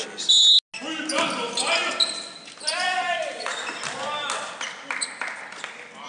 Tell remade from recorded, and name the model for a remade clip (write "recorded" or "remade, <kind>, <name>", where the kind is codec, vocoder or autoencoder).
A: recorded